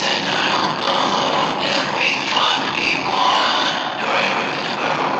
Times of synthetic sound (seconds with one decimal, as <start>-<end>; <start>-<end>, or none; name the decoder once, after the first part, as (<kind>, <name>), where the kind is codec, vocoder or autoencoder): 0.6-3.7 (codec, DAC)